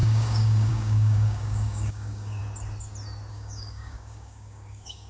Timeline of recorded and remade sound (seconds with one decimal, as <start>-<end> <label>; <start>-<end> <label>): 0.0-2.4 remade; 2.4-3.3 recorded; 3.3-5.1 remade